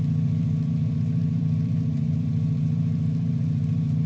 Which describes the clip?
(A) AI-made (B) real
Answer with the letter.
A